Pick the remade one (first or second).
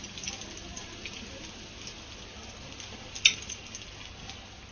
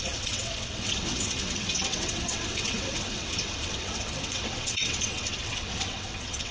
second